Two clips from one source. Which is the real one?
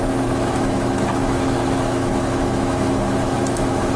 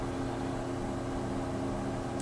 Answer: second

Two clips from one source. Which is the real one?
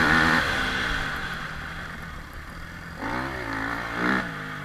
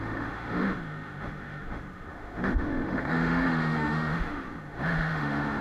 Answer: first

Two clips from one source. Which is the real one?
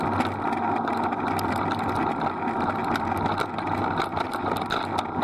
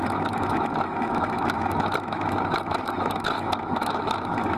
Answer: first